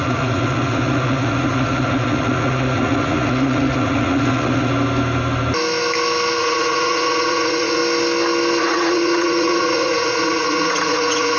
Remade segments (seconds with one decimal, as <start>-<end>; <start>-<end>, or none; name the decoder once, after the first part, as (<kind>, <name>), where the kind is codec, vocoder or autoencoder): 0.0-4.7 (vocoder, Vocos); 6.4-7.8; 8.6-11.4